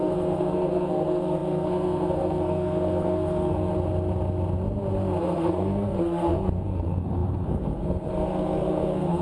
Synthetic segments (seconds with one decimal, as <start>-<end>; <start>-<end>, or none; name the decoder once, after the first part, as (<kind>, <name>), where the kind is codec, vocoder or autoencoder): 0.0-3.7 (codec, SNAC); 5.2-9.2